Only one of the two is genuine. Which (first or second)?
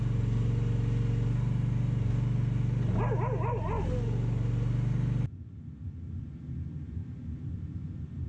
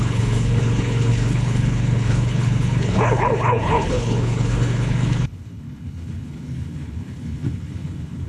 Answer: first